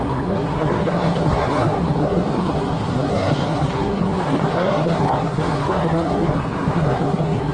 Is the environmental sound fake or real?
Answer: fake